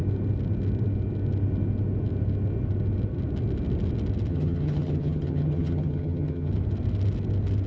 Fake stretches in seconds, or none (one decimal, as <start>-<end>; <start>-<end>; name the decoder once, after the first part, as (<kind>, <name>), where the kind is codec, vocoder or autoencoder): 4.3-6.5 (vocoder, HiFi-GAN)